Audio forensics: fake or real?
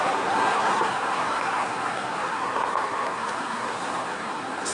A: fake